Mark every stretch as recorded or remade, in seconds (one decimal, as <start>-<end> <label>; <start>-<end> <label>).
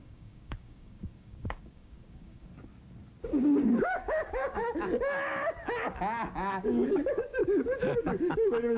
0.0-2.5 remade; 2.5-3.8 recorded; 3.8-4.6 remade; 4.6-6.6 recorded; 6.6-7.4 remade; 7.4-8.0 recorded; 8.0-8.8 remade